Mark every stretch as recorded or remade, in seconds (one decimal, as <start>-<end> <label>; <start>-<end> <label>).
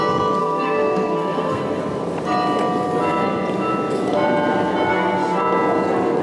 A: 0.0-0.4 recorded; 0.4-1.8 remade; 1.8-4.9 recorded; 4.9-5.4 remade; 5.4-6.2 recorded